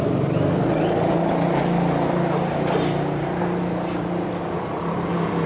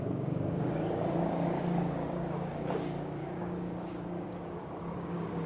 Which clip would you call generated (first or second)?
second